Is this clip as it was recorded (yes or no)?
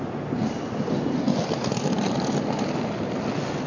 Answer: yes